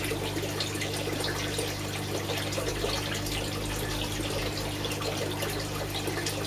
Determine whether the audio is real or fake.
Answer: real